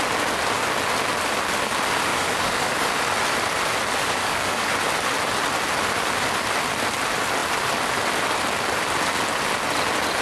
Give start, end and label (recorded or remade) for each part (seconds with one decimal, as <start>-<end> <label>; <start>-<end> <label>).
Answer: 0.0-2.1 recorded; 2.1-2.9 remade; 2.9-4.0 recorded; 4.0-4.7 remade; 4.7-10.2 recorded